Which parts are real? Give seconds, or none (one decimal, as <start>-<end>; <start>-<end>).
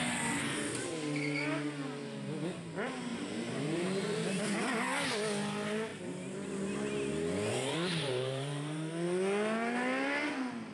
0.0-3.1; 4.4-7.5; 8.9-10.7